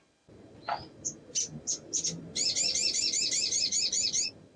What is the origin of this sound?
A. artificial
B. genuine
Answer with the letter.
A